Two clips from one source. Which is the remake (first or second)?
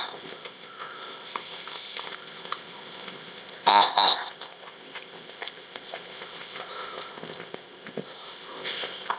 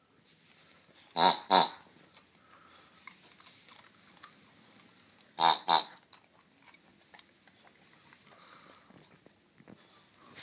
first